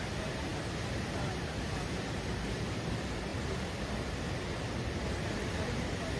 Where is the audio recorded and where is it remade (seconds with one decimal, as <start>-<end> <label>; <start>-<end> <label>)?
0.0-6.2 recorded